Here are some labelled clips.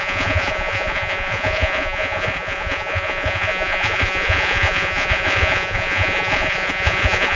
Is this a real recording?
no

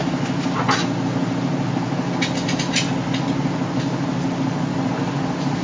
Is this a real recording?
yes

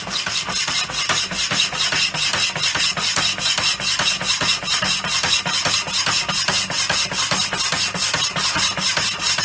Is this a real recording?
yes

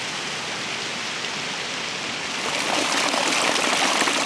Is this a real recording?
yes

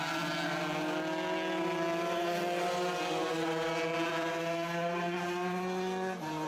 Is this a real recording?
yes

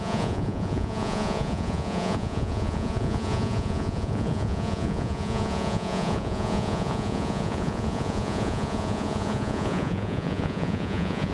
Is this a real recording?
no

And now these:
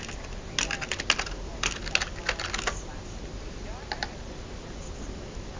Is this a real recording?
yes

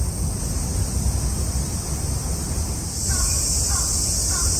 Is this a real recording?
yes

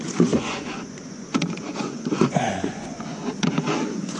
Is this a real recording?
no